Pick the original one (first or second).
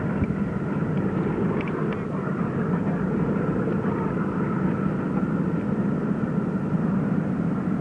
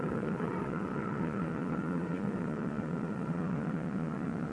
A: first